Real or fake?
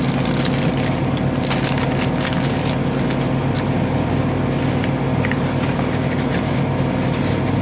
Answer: real